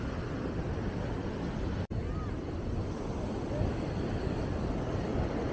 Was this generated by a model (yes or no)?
no